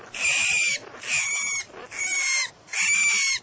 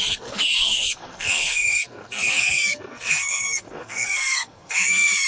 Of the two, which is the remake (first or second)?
second